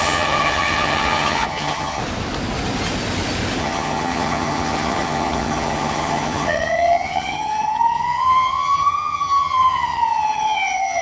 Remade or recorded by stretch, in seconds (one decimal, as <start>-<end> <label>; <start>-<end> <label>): 0.0-2.0 remade; 2.0-3.6 recorded; 3.6-11.0 remade